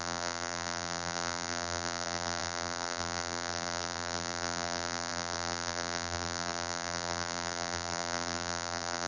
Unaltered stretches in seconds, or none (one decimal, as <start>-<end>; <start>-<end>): none